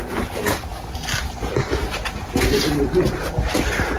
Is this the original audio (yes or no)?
yes